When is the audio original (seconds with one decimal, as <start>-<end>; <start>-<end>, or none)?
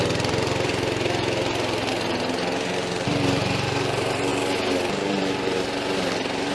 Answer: 0.7-3.1; 4.3-4.9